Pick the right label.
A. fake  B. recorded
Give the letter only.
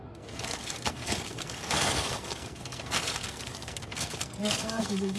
A